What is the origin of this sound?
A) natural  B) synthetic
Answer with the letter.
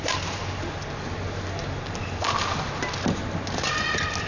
A